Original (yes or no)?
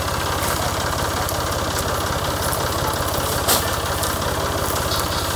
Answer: yes